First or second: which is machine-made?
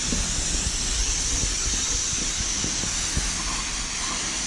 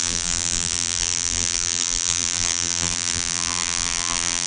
second